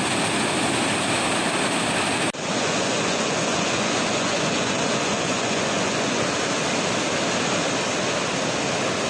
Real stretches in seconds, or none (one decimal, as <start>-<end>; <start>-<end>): 0.0-2.5; 6.2-9.1